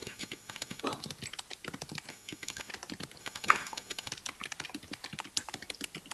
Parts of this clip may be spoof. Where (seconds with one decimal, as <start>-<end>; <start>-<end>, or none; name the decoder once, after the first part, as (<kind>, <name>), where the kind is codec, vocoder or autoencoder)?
0.0-0.8 (autoencoder, DAC-VAE); 2.1-2.7; 3.2-4.1